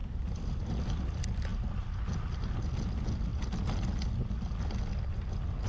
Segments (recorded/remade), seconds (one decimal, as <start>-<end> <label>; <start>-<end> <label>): 0.0-5.7 recorded